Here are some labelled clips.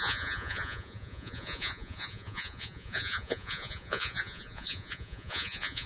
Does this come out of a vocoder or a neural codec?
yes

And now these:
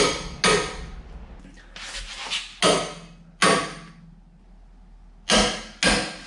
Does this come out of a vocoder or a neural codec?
no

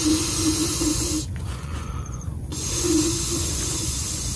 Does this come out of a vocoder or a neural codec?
yes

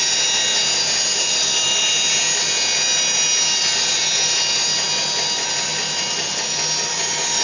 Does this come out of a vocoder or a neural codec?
no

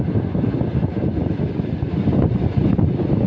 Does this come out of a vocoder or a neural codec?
no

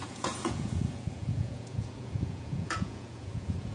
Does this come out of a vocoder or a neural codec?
yes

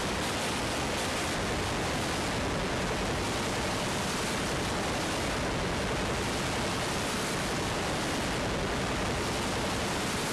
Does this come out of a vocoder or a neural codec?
no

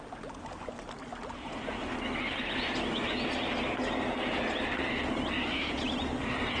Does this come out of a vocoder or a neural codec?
no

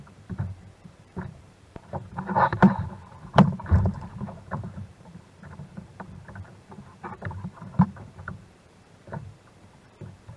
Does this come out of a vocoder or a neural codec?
yes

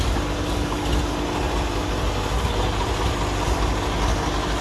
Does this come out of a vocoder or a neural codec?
no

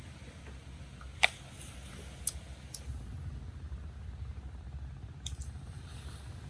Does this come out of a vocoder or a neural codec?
no